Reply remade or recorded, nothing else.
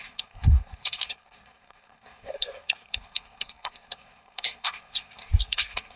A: remade